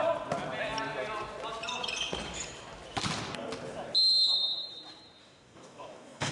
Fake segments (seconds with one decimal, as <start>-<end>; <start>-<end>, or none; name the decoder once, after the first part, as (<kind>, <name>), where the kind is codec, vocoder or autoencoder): 5.2-6.3 (codec, DAC)